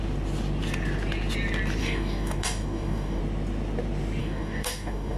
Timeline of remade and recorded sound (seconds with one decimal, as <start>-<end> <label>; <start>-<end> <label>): 0.0-1.8 recorded; 1.8-3.2 remade; 3.2-4.2 recorded; 4.2-5.2 remade